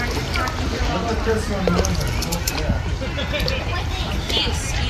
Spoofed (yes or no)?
no